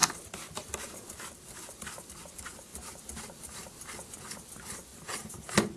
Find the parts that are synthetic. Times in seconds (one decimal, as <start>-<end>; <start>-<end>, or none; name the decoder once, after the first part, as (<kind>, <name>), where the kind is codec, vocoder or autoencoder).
0.0-2.2 (vocoder, BigVGAN v2); 2.7-3.9